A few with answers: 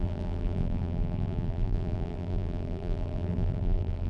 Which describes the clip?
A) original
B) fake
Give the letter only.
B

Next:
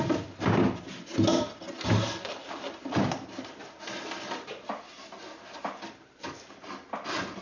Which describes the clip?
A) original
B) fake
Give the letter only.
B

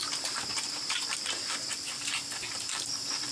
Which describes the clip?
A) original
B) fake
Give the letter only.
B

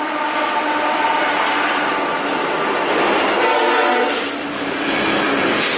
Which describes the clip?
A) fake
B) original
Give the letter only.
B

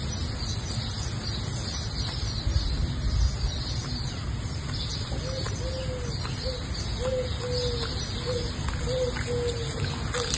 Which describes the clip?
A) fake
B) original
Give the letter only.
B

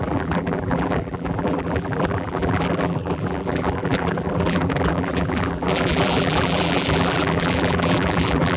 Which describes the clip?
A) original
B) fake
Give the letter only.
B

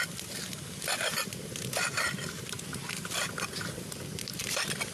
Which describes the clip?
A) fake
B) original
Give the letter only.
B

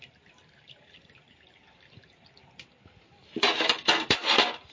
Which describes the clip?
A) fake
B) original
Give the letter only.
A